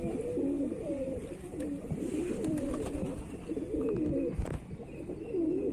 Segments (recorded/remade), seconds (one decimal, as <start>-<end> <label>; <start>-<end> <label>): 0.0-1.1 recorded; 1.1-3.8 remade; 3.8-5.7 recorded